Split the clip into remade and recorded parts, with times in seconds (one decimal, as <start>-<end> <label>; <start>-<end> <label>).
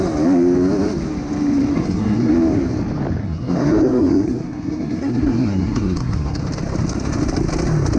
0.0-1.7 recorded; 1.7-2.3 remade; 2.3-3.2 recorded; 3.2-6.4 remade; 6.4-8.0 recorded